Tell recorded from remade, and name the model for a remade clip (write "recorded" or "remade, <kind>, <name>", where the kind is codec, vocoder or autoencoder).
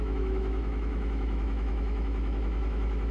remade, autoencoder, DAC-VAE